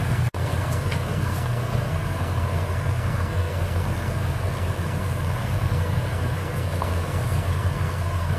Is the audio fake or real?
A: fake